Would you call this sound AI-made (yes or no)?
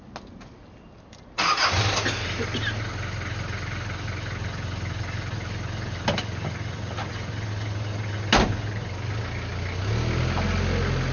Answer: no